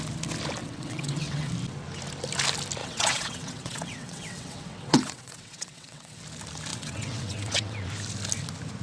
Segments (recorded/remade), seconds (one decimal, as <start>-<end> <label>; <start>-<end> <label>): 0.0-0.6 recorded; 0.6-1.5 remade; 1.5-2.8 recorded; 2.8-6.2 remade; 6.2-6.7 recorded; 6.7-7.9 remade; 7.9-8.8 recorded